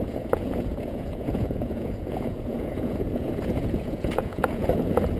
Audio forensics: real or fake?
fake